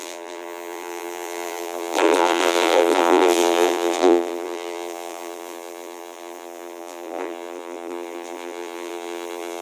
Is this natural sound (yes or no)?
no